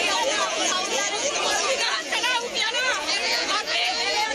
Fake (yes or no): yes